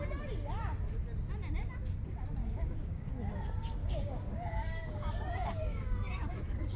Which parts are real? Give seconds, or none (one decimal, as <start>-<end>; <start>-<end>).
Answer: 0.0-2.4; 3.1-3.8